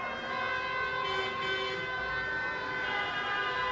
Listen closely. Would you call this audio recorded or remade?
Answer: recorded